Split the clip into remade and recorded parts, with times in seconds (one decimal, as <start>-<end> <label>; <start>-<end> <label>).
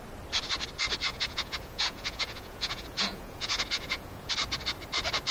0.0-1.1 recorded; 1.1-4.3 remade; 4.3-5.3 recorded